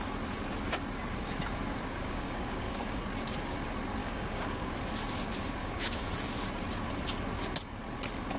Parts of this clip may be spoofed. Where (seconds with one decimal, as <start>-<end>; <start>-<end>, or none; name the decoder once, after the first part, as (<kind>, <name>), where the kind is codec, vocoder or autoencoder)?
2.0-3.0 (codec, DAC); 4.0-4.7; 5.6-6.1